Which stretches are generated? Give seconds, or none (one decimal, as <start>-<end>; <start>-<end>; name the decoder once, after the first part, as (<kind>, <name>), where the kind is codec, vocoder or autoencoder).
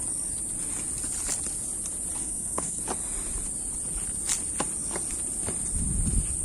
2.2-2.8 (codec, SNAC)